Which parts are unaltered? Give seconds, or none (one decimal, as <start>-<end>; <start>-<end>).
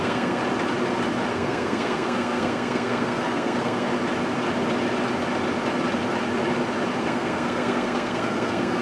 0.4-1.3; 3.9-7.0